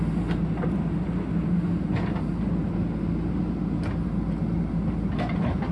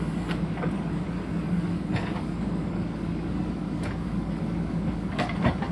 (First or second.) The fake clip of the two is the second